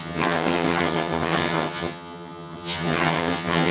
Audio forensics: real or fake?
fake